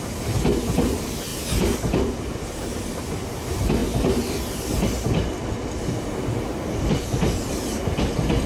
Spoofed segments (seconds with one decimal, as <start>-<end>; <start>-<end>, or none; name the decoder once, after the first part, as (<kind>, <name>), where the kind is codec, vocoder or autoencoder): none

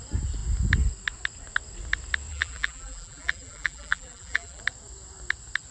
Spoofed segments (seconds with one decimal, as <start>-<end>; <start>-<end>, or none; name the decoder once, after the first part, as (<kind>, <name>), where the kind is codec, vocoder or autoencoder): 2.3-4.6 (vocoder, BigVGAN v2)

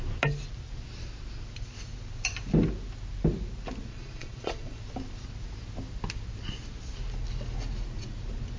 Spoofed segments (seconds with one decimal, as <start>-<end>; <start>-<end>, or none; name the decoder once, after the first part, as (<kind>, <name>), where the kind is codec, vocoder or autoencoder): 3.9-4.8 (vocoder, Vocos)

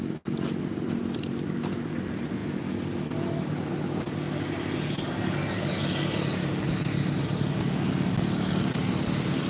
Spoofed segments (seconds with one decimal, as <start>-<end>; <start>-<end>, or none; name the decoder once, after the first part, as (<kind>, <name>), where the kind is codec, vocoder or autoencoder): none

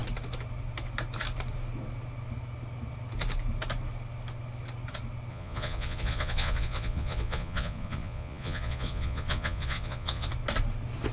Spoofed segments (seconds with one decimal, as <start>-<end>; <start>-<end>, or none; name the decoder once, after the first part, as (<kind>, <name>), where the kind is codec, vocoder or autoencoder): 5.3-10.3 (vocoder, Vocos)

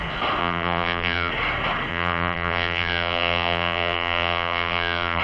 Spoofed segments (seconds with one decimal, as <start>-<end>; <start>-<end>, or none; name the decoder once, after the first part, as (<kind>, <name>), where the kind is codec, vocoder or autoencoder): 0.4-1.3 (vocoder, BigVGAN v2); 1.9-5.2

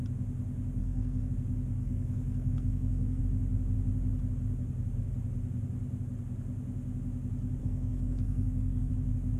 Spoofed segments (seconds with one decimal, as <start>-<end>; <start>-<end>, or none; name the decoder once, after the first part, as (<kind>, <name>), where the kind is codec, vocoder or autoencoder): 0.8-1.3 (codec, SNAC); 1.8-3.2; 7.6-8.9

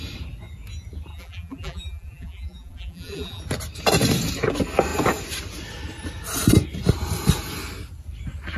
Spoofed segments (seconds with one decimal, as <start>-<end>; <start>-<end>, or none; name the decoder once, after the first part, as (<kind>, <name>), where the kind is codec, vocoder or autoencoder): 1.1-3.4 (vocoder, BigVGAN v2)